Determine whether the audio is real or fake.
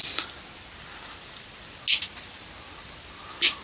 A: real